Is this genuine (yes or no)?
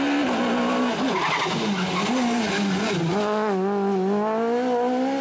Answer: yes